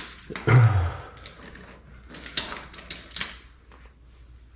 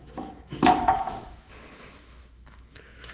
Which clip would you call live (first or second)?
first